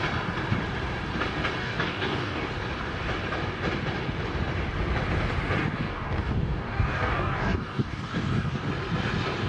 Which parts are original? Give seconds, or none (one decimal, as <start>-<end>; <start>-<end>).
0.0-1.6; 2.5-5.6; 8.7-9.5